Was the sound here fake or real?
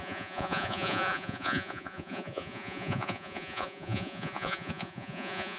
fake